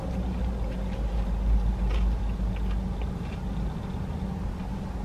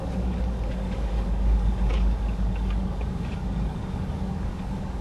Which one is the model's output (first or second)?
second